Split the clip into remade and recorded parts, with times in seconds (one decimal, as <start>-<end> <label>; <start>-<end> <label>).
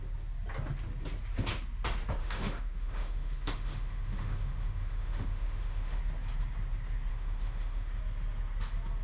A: 0.0-2.2 recorded; 2.2-6.0 remade; 6.0-7.1 recorded; 7.1-8.0 remade; 8.0-9.0 recorded